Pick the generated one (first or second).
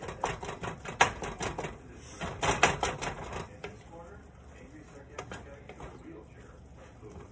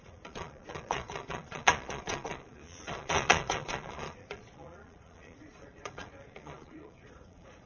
second